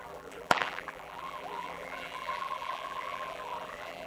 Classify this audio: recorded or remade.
remade